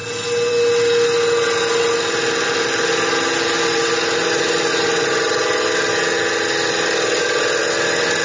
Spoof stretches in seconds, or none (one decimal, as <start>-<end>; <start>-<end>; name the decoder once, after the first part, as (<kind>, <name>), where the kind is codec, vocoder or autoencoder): none

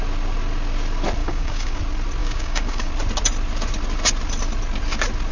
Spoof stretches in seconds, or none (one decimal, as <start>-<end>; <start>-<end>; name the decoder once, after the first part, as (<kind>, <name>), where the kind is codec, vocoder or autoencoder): 1.2-1.8 (codec, DAC); 2.2-2.9

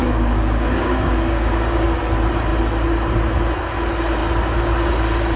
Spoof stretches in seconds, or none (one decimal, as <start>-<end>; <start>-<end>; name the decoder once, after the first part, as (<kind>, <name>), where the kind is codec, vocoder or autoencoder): 0.0-2.0 (codec, DAC)